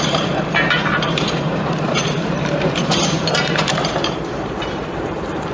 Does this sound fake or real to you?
fake